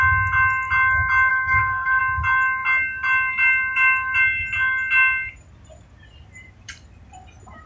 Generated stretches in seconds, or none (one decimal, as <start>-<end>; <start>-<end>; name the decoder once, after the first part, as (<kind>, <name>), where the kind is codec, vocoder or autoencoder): 1.3-2.0 (codec, SNAC)

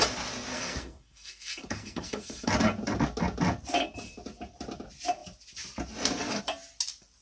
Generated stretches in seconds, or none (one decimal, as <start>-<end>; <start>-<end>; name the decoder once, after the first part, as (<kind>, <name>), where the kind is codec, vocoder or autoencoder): 0.5-2.5 (codec, SNAC)

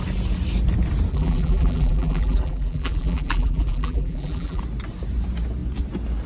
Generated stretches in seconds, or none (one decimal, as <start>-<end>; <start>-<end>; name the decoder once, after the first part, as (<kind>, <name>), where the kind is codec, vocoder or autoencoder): 1.1-4.6 (vocoder, BigVGAN v2)

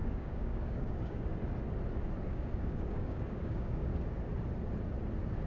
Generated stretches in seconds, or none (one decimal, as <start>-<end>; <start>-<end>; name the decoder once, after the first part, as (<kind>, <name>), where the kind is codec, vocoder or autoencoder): 0.0-1.3 (codec, DAC); 2.3-3.9

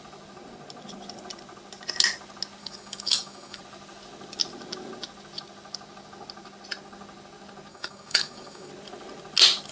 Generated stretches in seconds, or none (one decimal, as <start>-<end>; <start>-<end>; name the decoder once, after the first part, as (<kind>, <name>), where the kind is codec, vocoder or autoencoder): 2.6-3.6 (codec, DAC); 7.7-8.7

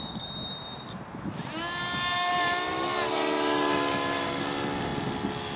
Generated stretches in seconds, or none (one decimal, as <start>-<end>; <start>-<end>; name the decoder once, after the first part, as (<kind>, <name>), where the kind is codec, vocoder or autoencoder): none

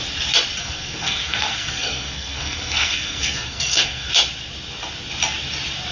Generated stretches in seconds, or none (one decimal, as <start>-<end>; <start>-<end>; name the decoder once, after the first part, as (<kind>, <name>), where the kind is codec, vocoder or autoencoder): 0.6-4.1 (codec, SNAC)

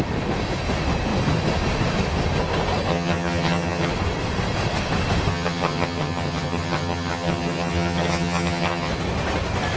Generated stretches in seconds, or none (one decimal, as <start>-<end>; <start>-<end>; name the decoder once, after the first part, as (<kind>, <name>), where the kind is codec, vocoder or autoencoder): 2.9-3.9 (vocoder, HiFi-GAN); 5.3-8.9